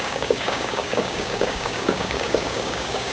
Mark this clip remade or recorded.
remade